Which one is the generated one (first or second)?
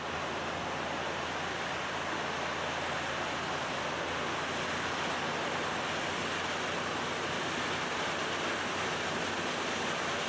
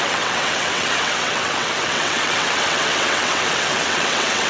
second